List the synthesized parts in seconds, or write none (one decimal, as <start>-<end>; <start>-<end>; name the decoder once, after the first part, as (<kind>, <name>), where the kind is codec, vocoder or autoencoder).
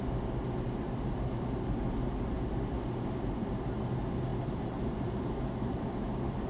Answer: none